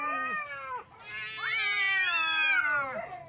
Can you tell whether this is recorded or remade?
recorded